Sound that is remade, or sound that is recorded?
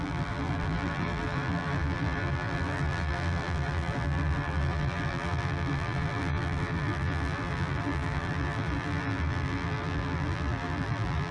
remade